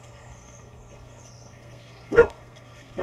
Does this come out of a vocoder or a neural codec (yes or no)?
yes